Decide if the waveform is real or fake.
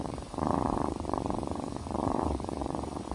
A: fake